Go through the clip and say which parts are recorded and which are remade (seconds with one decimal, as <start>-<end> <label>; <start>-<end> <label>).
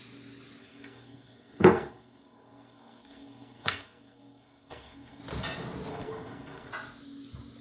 0.0-0.6 recorded; 0.6-5.2 remade; 5.2-5.9 recorded; 5.9-6.7 remade; 6.7-7.6 recorded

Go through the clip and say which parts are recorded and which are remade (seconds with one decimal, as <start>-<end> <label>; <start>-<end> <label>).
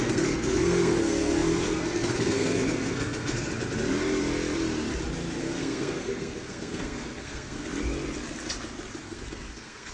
0.0-3.5 remade; 3.5-5.4 recorded; 5.4-7.7 remade; 7.7-9.0 recorded; 9.0-9.9 remade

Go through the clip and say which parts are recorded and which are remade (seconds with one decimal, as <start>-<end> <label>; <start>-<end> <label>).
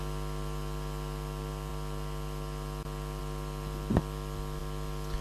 0.0-5.2 recorded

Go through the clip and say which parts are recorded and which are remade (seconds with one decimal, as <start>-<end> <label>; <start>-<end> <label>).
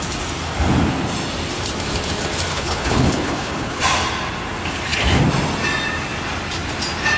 0.0-2.5 recorded; 2.5-3.8 remade; 3.8-7.2 recorded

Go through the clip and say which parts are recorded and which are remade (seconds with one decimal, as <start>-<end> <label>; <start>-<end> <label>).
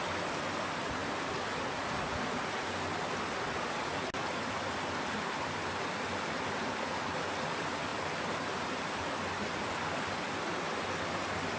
0.0-11.6 recorded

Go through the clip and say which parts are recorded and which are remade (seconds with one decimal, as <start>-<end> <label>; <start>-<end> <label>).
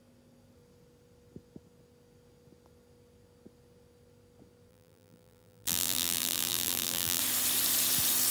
0.0-4.7 recorded; 4.7-7.2 remade; 7.2-8.3 recorded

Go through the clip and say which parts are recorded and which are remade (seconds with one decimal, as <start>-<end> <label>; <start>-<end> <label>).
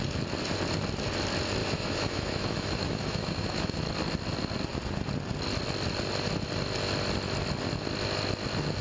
0.0-1.6 recorded; 1.6-3.8 remade; 3.8-8.8 recorded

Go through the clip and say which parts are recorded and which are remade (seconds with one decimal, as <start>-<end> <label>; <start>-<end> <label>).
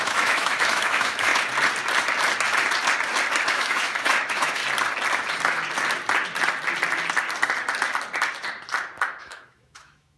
0.0-1.3 remade; 1.3-3.5 recorded; 3.5-4.6 remade; 4.6-9.2 recorded; 9.2-10.2 remade